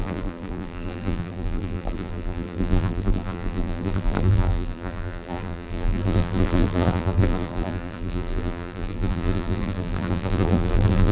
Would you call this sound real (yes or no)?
no